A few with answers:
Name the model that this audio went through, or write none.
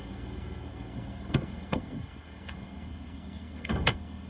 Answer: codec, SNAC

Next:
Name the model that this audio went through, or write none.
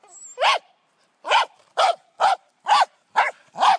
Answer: none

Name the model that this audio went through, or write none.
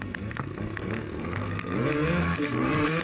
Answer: codec, SNAC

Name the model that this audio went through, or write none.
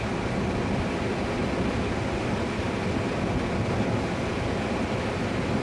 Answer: none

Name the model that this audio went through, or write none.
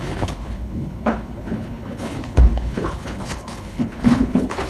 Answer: codec, HILCodec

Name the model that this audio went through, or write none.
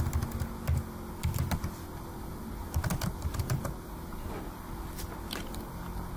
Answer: none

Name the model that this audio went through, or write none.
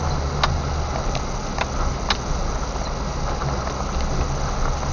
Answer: none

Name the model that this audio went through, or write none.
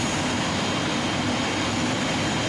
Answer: none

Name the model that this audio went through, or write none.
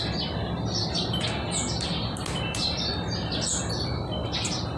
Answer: none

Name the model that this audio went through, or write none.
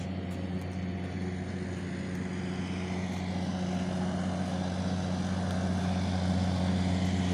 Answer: none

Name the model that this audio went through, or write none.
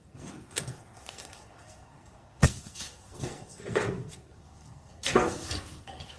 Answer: codec, SNAC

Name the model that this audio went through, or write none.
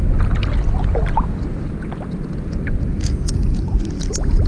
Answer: none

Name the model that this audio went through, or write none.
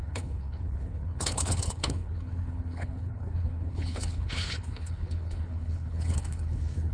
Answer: codec, HILCodec